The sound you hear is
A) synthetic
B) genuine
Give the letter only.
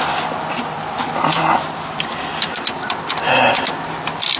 B